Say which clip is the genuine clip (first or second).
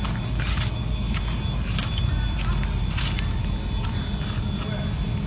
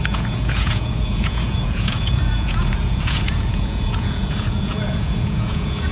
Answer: first